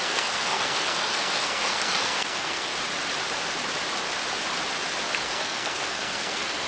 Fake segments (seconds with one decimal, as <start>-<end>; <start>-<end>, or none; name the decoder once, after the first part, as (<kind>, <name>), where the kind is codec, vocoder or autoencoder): 0.0-2.7 (codec, SNAC); 5.2-6.7